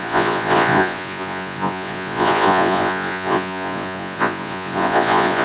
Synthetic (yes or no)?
yes